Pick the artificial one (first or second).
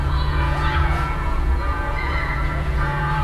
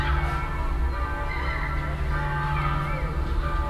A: first